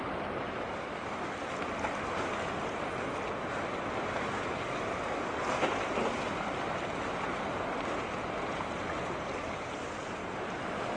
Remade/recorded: recorded